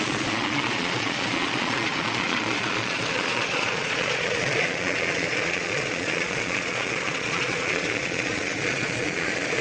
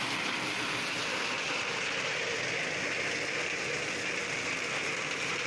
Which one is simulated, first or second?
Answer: first